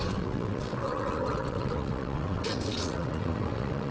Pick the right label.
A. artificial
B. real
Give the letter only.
A